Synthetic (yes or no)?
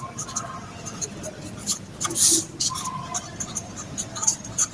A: yes